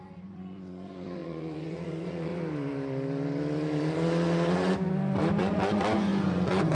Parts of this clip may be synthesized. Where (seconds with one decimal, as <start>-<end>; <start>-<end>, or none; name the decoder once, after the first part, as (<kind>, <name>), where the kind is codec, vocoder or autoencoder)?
0.0-2.3 (vocoder, Vocos); 5.4-6.7